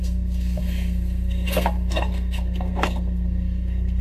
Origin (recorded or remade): remade